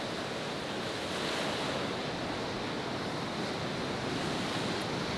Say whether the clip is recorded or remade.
recorded